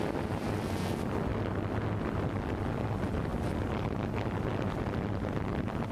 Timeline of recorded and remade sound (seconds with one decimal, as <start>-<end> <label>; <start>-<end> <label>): 0.0-5.9 recorded